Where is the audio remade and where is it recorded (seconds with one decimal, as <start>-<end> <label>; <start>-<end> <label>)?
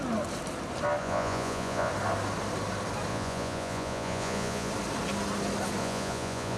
0.0-1.0 recorded; 1.0-1.9 remade; 1.9-3.1 recorded; 3.1-4.7 remade; 4.7-5.8 recorded; 5.8-6.6 remade